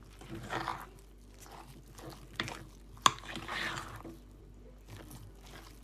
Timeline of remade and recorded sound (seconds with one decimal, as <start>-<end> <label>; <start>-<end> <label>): 0.0-5.8 recorded